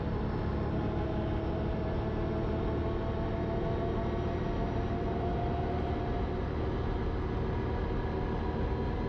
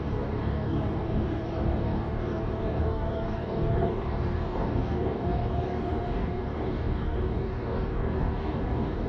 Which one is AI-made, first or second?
second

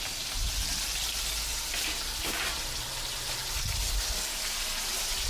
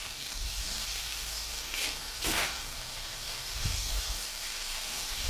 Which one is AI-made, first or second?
second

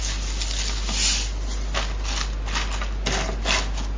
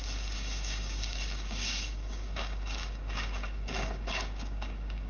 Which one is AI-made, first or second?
second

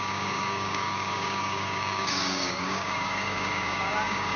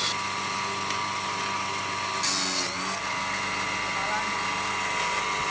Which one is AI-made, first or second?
first